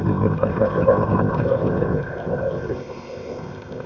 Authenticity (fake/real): fake